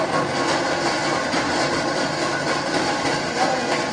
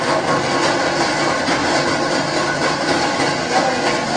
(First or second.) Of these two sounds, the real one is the second